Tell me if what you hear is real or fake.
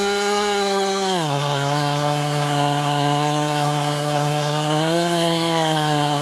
fake